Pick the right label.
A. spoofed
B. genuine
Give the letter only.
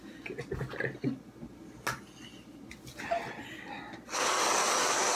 B